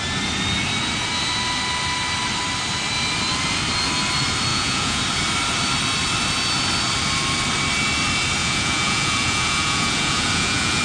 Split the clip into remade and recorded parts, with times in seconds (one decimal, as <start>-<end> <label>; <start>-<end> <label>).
0.0-4.5 recorded; 4.5-5.0 remade; 5.0-8.4 recorded; 8.4-10.8 remade